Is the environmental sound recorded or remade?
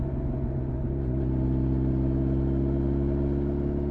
recorded